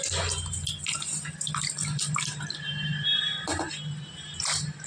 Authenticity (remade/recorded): recorded